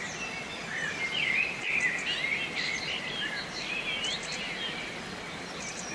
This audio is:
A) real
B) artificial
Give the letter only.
A